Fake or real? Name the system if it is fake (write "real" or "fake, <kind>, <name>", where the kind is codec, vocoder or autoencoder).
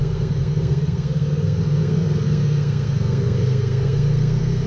fake, codec, SNAC